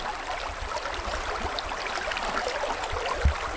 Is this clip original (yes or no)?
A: yes